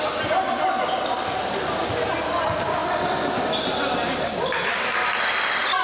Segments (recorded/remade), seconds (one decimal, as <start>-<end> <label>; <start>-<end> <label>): 0.0-5.8 recorded